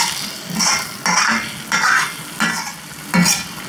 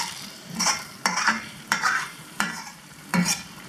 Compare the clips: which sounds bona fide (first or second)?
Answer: first